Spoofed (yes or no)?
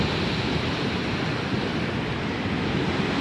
yes